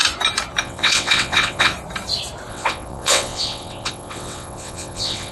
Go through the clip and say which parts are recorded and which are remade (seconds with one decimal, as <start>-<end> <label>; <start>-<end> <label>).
0.0-0.6 recorded; 0.6-1.7 remade; 1.7-2.5 recorded; 2.5-5.3 remade